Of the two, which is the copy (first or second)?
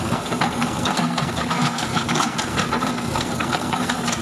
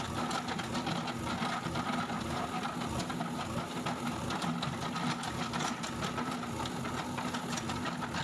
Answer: first